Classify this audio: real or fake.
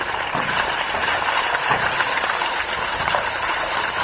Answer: fake